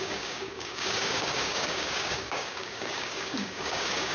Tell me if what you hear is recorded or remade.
remade